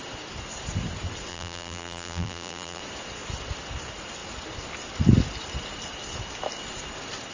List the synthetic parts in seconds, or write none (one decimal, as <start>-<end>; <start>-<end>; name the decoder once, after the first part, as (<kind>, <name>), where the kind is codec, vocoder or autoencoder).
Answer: 1.3-2.8 (vocoder, BigVGAN v2)